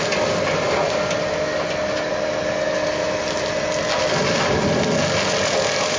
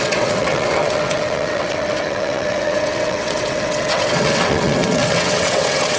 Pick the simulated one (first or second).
second